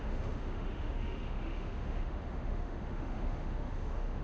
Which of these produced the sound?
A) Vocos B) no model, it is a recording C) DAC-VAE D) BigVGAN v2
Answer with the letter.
C